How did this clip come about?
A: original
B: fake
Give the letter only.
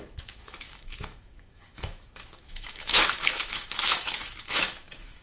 B